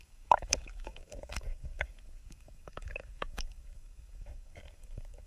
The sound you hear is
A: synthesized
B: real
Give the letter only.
A